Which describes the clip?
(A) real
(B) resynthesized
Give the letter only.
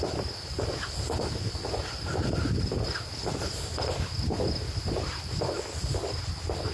A